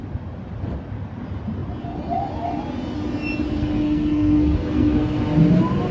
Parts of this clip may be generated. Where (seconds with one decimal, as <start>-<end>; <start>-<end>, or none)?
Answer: 3.5-5.2